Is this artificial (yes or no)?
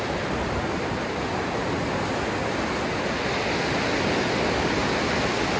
no